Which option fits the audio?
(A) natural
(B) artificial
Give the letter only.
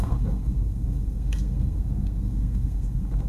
B